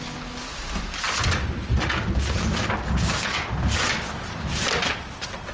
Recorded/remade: recorded